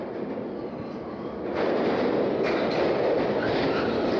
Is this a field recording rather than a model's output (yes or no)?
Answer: yes